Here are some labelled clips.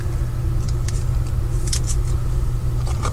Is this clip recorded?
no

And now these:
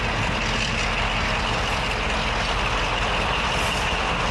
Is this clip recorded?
yes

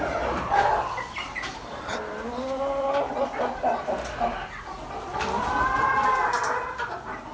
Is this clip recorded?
yes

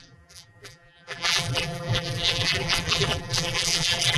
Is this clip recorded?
no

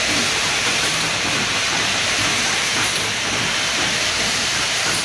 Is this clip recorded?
no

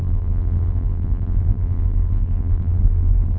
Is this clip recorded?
no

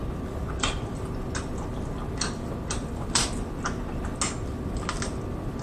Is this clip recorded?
yes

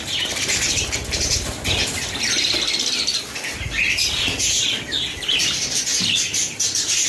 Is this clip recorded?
no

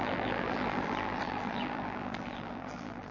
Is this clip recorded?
no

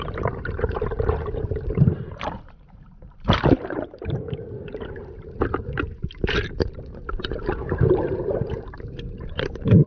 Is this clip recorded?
no